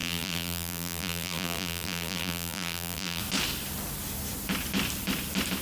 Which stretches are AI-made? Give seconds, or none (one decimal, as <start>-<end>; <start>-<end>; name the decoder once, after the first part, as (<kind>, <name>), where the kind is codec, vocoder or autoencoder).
0.0-3.2 (vocoder, BigVGAN v2)